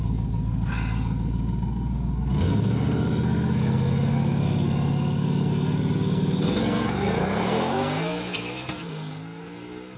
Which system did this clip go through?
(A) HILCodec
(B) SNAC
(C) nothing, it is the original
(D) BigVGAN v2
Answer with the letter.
B